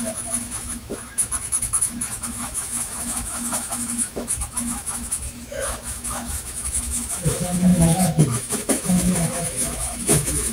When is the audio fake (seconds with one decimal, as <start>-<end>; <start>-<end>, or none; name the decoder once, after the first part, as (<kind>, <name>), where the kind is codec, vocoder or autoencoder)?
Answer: 0.0-10.5 (autoencoder, DAC-VAE)